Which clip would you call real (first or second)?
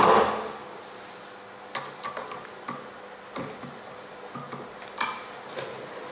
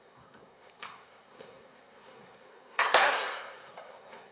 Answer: first